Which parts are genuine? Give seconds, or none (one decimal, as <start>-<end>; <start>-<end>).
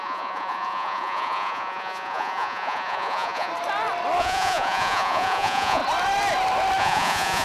3.5-4.2; 5.8-6.8